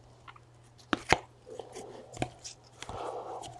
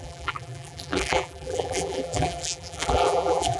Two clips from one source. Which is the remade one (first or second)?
second